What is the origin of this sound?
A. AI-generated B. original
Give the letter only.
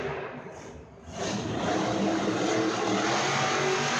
B